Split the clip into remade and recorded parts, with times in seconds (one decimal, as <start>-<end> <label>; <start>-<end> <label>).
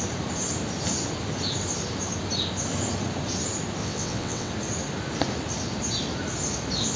0.0-3.8 recorded; 3.8-4.5 remade; 4.5-7.0 recorded